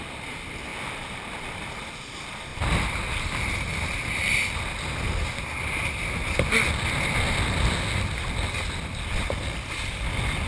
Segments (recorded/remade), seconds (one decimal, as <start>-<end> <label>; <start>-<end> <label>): 0.0-0.7 recorded; 0.7-1.3 remade; 1.3-2.5 recorded; 2.5-4.3 remade; 4.3-10.5 recorded